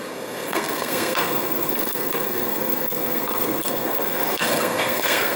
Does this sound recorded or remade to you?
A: remade